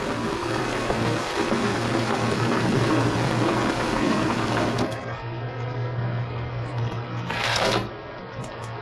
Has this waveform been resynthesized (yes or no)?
yes